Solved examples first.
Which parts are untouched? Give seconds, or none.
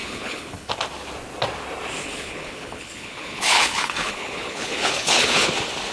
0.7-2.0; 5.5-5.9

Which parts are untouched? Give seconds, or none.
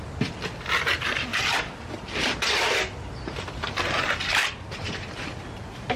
0.0-1.3; 3.7-4.4; 5.4-6.0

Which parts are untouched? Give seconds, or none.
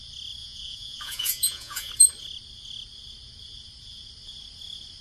0.0-0.4; 1.9-5.0